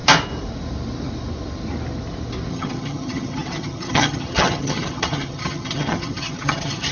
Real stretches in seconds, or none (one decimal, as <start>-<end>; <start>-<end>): 0.0-2.5